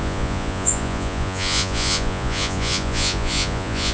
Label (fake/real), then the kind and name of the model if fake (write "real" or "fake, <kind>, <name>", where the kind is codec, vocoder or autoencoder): fake, vocoder, Vocos